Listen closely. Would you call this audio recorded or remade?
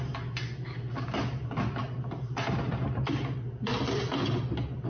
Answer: recorded